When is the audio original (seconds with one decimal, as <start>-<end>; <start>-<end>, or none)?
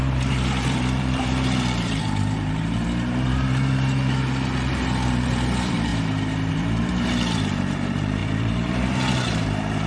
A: 5.9-6.5